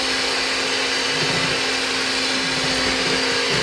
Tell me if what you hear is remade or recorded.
recorded